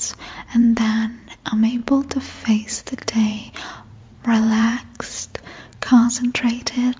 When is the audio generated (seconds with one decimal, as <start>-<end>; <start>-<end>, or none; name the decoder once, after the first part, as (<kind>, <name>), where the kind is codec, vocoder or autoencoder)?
0.0-1.8 (vocoder, Vocos); 2.6-7.0